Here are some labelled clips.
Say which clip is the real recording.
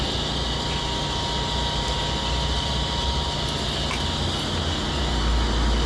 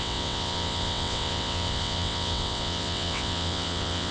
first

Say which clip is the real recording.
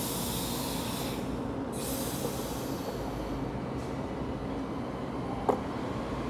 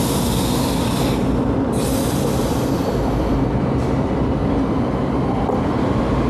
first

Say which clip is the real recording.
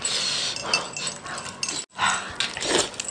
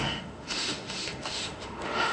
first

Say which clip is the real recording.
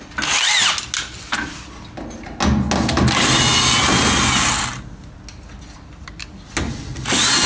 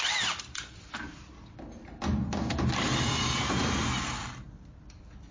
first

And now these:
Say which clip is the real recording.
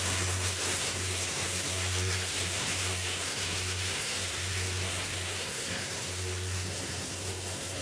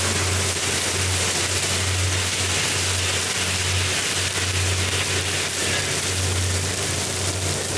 second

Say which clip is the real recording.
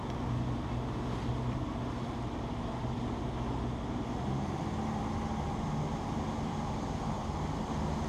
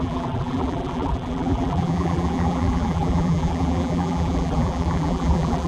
first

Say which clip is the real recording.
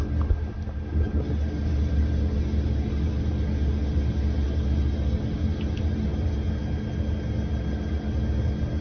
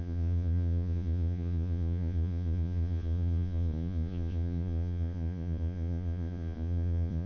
first